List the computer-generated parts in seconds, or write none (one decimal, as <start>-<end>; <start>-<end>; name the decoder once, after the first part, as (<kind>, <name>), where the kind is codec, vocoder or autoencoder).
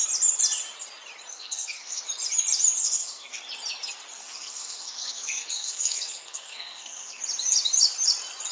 1.3-2.0 (codec, SNAC); 2.8-3.5; 4.1-7.2